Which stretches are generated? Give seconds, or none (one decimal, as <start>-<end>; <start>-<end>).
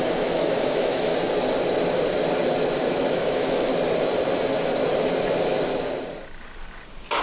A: 0.0-1.1; 3.1-3.7